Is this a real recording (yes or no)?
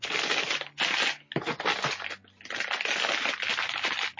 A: yes